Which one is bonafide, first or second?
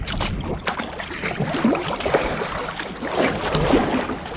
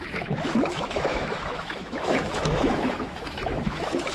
first